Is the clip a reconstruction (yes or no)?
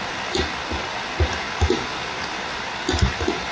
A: no